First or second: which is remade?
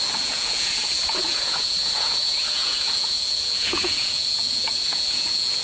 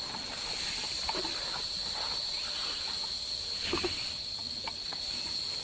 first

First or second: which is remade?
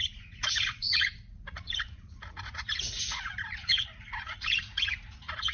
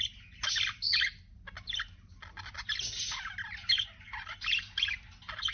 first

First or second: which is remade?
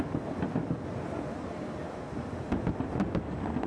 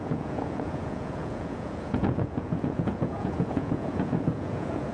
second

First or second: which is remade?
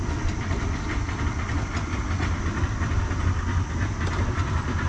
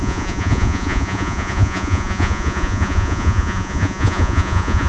second